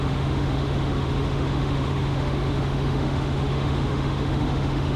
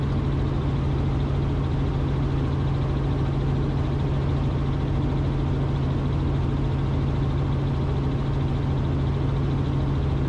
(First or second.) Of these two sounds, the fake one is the first